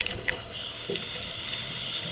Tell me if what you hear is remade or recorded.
remade